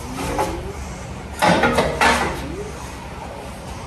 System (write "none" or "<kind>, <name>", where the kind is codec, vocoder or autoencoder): none